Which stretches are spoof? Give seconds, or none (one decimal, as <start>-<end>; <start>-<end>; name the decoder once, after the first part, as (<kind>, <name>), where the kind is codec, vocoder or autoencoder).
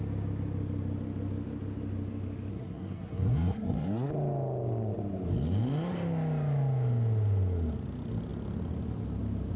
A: 2.5-4.1 (codec, SNAC)